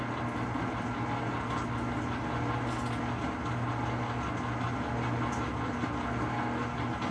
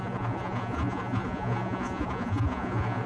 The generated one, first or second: second